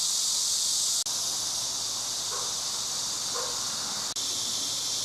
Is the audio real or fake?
real